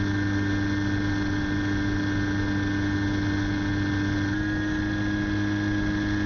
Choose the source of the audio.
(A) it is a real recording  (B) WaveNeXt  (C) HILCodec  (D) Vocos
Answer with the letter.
A